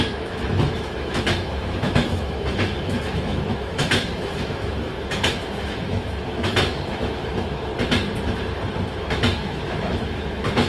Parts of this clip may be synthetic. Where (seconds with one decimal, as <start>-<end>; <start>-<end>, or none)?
0.0-7.7; 8.9-10.7